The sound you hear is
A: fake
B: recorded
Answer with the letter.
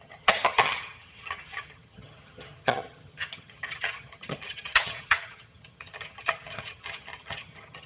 A